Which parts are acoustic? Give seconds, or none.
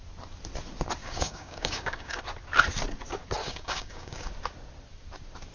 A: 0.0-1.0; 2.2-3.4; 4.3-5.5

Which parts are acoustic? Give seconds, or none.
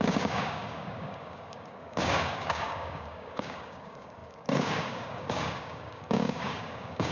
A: none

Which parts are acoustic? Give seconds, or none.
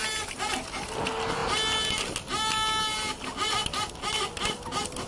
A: 0.0-5.1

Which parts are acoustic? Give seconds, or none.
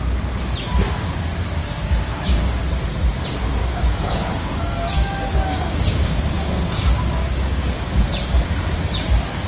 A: 0.0-1.6; 2.6-3.6; 7.8-9.5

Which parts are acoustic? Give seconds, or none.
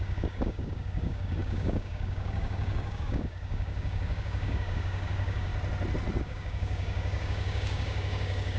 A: 5.5-6.2